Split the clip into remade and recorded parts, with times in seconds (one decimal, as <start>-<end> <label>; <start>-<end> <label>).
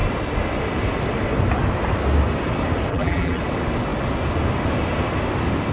0.0-2.9 recorded; 2.9-3.4 remade; 3.4-5.7 recorded